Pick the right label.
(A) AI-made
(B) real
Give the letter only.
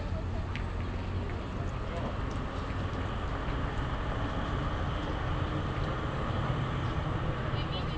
B